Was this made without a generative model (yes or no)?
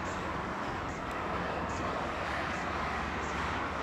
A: no